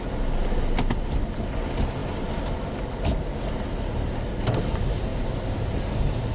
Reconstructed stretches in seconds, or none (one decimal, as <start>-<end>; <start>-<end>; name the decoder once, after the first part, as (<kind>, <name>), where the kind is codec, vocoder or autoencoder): none